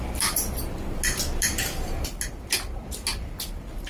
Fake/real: real